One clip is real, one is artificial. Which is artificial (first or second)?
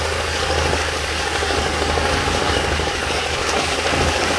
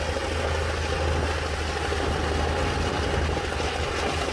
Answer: first